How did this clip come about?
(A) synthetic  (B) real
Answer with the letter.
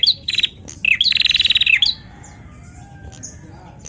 B